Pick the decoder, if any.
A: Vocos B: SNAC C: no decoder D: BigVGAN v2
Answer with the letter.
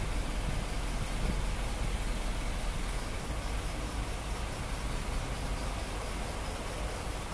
C